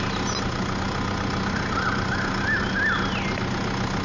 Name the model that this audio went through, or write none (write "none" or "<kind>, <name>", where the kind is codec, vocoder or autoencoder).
none